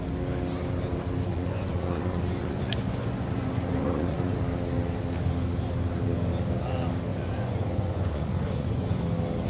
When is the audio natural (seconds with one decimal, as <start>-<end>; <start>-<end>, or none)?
0.0-1.3; 4.4-7.1; 9.0-9.5